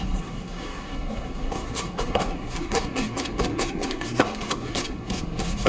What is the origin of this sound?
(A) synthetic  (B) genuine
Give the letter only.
A